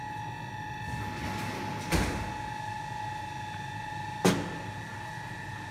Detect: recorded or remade recorded